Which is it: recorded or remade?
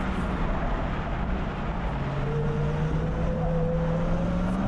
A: recorded